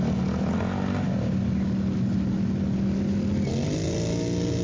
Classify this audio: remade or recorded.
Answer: recorded